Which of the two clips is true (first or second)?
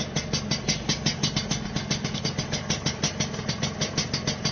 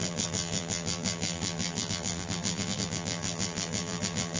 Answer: first